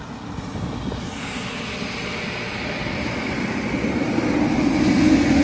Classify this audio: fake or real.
real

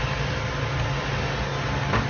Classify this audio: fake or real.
real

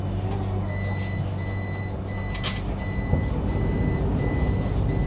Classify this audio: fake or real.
real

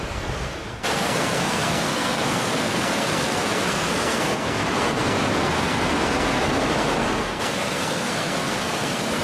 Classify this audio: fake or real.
fake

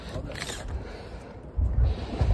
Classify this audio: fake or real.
real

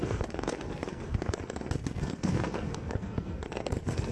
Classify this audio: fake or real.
fake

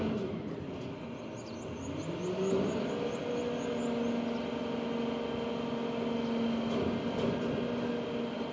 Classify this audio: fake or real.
real